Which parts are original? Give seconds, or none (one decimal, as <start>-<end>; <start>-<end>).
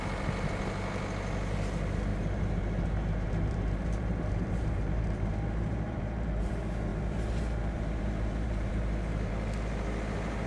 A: 0.0-2.1; 6.5-6.9; 9.3-10.5